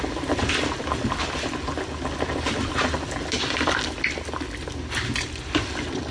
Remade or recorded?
recorded